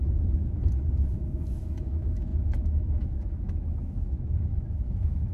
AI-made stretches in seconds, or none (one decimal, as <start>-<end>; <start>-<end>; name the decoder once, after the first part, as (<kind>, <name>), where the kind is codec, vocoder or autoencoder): 0.0-0.6 (autoencoder, DAC-VAE); 1.1-5.3